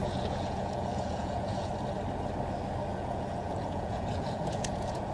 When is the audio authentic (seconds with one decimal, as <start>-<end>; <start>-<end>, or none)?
1.7-2.9